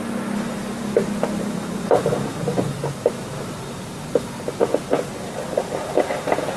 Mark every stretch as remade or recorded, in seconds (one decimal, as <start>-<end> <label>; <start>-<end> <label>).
0.0-2.3 recorded; 2.3-2.8 remade; 2.8-6.6 recorded